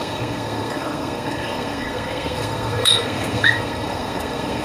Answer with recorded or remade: remade